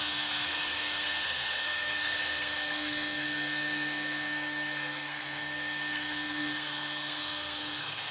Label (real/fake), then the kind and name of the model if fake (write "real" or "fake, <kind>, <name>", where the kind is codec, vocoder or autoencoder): fake, codec, SNAC